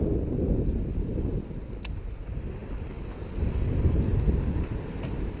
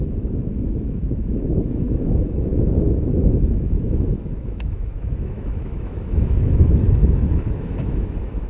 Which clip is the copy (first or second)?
second